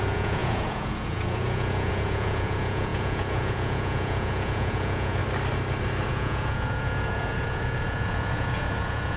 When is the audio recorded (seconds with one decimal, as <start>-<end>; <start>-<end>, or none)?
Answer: 5.2-6.1